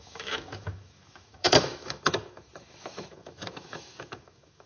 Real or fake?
fake